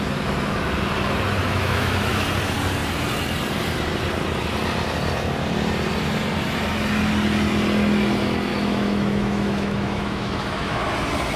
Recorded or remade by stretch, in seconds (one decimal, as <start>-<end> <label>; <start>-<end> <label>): 0.0-1.4 recorded; 1.4-2.2 remade; 2.2-8.5 recorded; 8.5-10.9 remade; 10.9-11.4 recorded